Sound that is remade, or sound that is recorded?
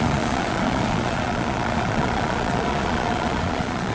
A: remade